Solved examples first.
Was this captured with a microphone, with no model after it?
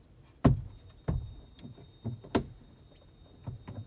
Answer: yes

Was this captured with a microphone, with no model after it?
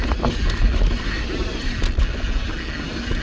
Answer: yes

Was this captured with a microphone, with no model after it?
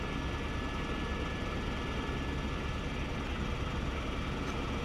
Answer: yes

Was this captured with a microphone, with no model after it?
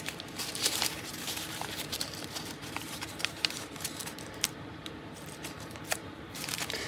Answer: no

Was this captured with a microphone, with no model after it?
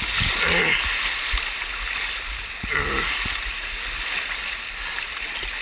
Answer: yes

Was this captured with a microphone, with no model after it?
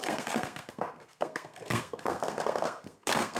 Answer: no